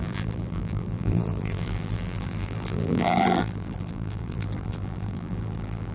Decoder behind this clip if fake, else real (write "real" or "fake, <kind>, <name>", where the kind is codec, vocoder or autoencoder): fake, vocoder, BigVGAN v2